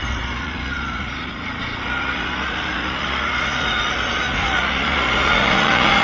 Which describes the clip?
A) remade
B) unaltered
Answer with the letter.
A